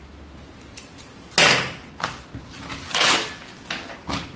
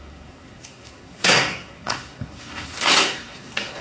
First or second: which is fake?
second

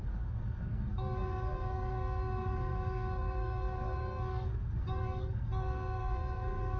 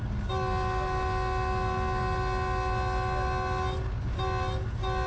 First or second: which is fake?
first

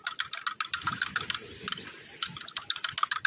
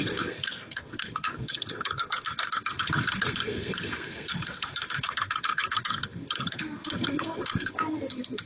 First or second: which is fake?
second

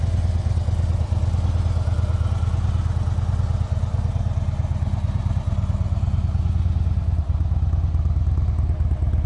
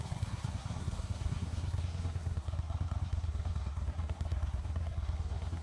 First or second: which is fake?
second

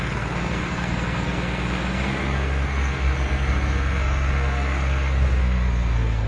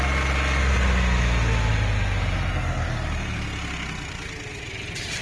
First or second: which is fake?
first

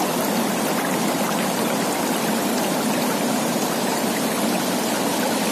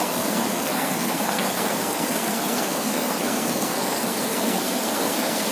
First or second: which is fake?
second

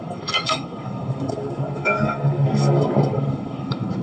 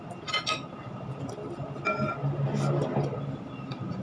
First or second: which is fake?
first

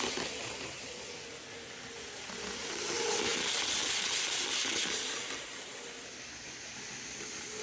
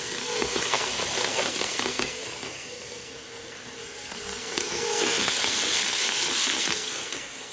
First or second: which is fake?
second